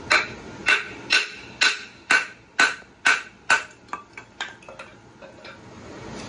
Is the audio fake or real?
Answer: real